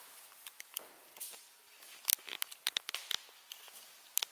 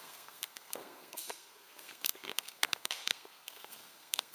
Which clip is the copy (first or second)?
second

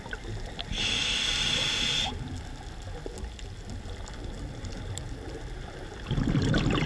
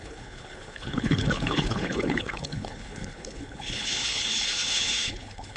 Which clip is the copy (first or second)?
second